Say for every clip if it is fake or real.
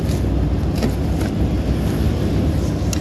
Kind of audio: real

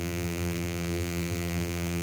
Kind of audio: fake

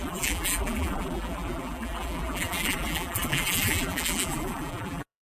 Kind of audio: fake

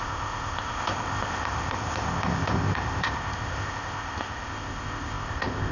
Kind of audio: fake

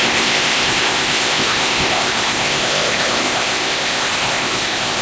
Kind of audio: fake